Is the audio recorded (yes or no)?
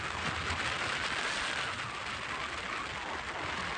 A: yes